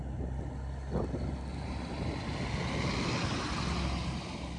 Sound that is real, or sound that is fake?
real